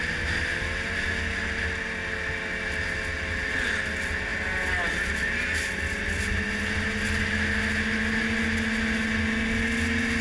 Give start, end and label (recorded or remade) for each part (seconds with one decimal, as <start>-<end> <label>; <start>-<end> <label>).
0.0-10.2 recorded